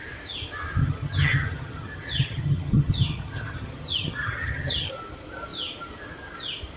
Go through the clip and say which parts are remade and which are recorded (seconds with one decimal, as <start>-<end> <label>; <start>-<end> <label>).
0.0-0.8 recorded; 0.8-4.9 remade; 4.9-6.8 recorded